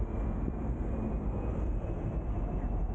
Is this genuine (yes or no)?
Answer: yes